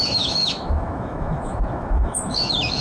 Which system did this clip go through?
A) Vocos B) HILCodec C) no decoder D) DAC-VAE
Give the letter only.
D